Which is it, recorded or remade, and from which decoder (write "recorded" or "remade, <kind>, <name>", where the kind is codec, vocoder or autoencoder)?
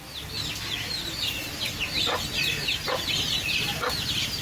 recorded